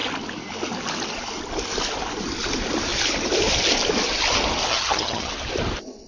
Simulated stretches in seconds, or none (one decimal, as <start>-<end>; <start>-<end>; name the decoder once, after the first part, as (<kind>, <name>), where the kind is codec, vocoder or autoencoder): 4.7-5.3 (vocoder, HiFi-GAN)